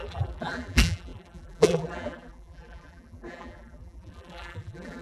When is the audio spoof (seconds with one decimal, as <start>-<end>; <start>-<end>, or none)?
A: 0.0-5.0